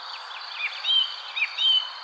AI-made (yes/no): no